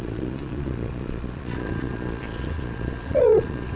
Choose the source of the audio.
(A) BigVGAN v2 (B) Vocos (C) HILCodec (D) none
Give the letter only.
B